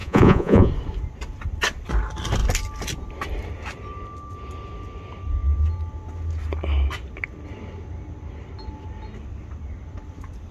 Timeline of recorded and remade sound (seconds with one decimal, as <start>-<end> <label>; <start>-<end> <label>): 0.0-0.7 remade; 0.7-10.5 recorded